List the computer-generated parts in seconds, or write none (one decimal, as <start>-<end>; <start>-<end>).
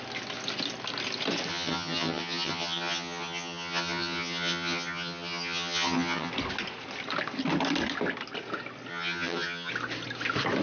1.5-6.3; 8.9-9.7